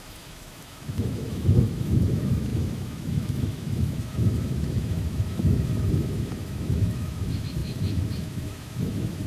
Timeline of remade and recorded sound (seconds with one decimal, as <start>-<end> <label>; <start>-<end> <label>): 0.0-9.3 remade